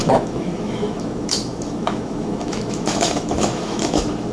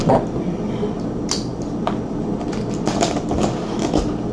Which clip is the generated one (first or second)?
first